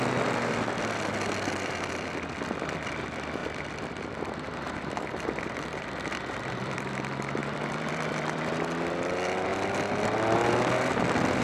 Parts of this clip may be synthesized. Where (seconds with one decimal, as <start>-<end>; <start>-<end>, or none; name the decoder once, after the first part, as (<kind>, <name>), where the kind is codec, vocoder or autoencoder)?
3.4-6.9 (vocoder, BigVGAN v2); 7.4-8.5